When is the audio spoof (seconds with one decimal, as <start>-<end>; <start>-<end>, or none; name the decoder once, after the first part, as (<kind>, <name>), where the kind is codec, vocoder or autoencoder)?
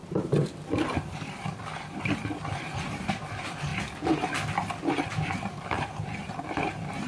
0.0-3.7 (vocoder, BigVGAN v2); 5.1-7.1